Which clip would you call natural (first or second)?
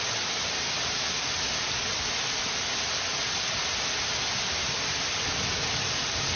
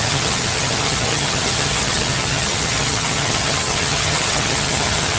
first